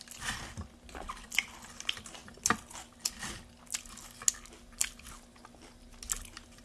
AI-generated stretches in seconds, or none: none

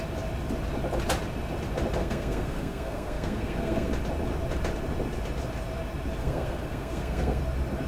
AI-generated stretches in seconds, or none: 2.0-3.9 (codec, SNAC); 6.2-7.4

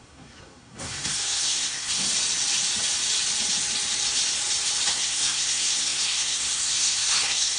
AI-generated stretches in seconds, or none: 0.0-2.1 (codec, SNAC); 4.9-7.6

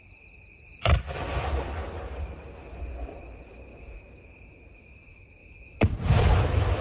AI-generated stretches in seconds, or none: 3.7-4.3 (autoencoder, DAC-VAE)

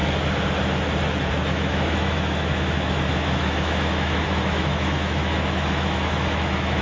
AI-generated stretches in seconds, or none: 1.3-6.8 (autoencoder, DAC-VAE)

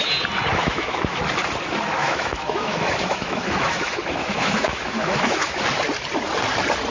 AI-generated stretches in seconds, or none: 0.6-1.2 (autoencoder, DAC-VAE); 2.0-5.6

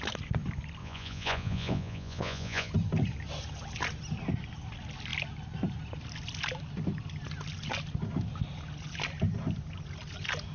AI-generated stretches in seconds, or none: 0.8-2.7 (vocoder, Vocos)

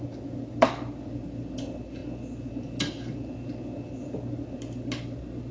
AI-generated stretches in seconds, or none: none